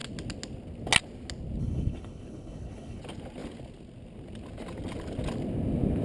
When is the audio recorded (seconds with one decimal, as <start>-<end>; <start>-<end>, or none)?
0.0-1.6; 3.0-6.0